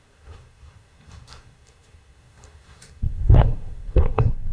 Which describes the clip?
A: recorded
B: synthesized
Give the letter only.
B